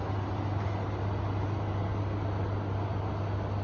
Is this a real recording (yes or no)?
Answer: yes